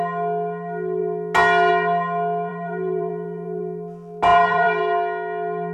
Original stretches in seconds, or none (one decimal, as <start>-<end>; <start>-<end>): 0.0-2.5; 3.6-4.3; 4.8-5.7